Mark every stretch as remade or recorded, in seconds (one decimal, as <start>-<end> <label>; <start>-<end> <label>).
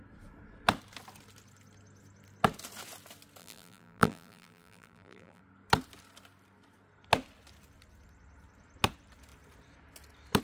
0.0-3.4 recorded; 3.4-5.4 remade; 5.4-10.4 recorded